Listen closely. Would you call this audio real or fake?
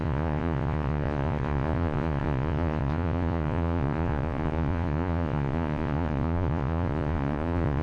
fake